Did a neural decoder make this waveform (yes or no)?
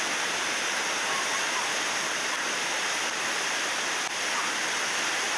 no